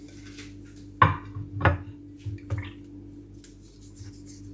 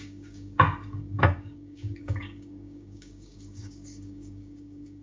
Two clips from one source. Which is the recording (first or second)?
first